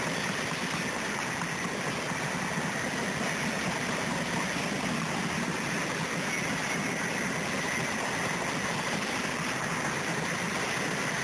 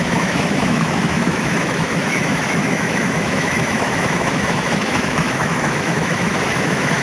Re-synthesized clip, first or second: second